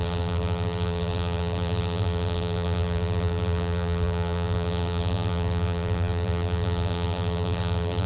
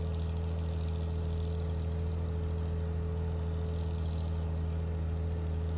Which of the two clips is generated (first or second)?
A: first